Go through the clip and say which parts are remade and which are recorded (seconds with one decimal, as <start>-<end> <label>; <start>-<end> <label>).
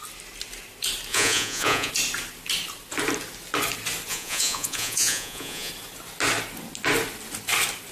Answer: 0.0-1.1 recorded; 1.1-1.9 remade; 1.9-4.1 recorded; 4.1-5.7 remade; 5.7-7.9 recorded